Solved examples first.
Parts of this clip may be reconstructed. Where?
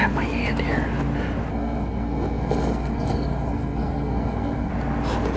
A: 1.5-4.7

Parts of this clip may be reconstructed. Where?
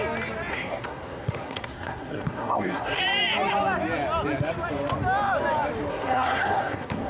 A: 0.5-3.0; 5.9-7.1